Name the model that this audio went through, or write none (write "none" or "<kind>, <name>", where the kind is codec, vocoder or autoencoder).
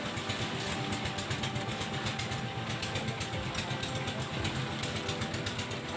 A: none